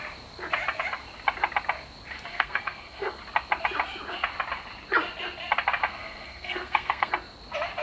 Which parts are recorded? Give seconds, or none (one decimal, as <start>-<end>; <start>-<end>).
0.0-2.3; 3.2-5.9; 7.1-7.8